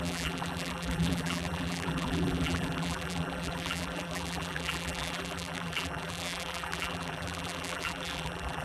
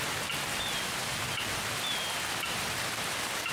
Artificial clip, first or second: first